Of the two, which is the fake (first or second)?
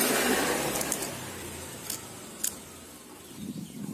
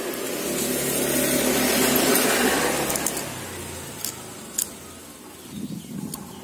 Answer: first